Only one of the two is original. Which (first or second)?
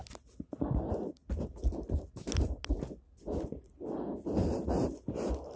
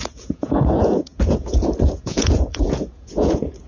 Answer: first